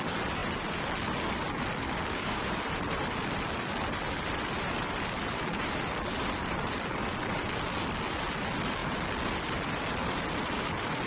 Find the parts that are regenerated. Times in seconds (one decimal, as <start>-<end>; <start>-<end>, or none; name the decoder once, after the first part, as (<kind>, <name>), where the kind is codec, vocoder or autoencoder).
1.8-2.4 (codec, DAC)